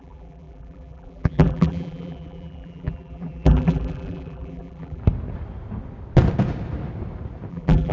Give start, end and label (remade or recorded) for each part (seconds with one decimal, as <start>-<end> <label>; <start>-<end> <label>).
0.0-5.0 remade; 5.0-7.5 recorded; 7.5-7.9 remade